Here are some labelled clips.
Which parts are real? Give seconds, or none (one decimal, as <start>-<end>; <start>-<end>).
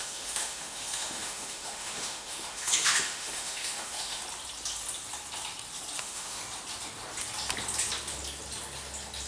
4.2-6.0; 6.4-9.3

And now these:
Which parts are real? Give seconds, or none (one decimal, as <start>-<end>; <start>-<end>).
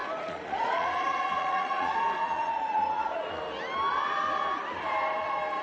3.4-5.6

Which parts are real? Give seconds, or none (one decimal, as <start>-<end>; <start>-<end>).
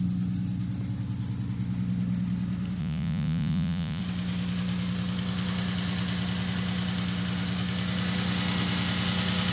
0.0-2.8; 4.0-9.5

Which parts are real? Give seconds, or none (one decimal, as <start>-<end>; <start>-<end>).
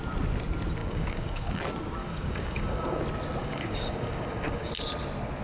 0.0-0.8; 1.6-2.0; 3.0-3.4; 4.7-5.4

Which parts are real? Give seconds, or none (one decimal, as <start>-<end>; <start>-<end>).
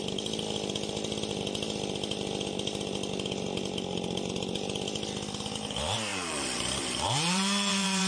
0.0-6.1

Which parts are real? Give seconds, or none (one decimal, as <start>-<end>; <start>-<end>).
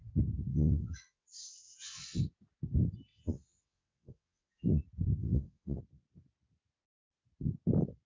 0.0-0.5; 2.2-3.1; 4.8-5.2; 5.8-8.1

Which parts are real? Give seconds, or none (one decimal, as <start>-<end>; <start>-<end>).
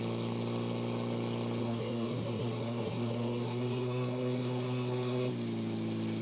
0.0-1.6; 5.3-6.2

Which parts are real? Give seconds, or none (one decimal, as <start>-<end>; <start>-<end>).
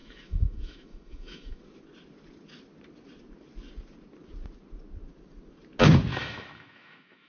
1.6-6.1